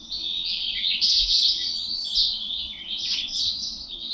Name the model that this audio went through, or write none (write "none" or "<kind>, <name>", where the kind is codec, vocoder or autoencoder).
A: vocoder, WaveNeXt